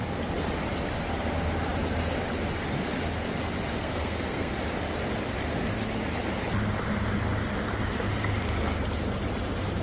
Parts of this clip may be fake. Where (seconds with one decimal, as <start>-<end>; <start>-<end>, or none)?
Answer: 3.8-4.5